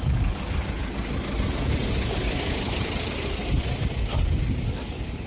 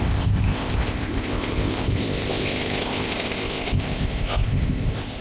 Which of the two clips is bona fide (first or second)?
first